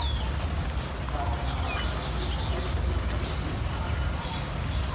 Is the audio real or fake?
real